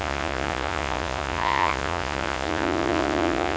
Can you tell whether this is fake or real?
fake